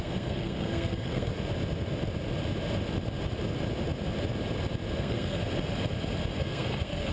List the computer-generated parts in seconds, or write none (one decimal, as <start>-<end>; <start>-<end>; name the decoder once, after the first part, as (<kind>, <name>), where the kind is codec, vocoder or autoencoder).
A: 0.0-1.3 (codec, SNAC); 5.0-5.4; 6.4-7.1